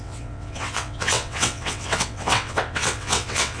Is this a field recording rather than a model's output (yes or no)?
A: no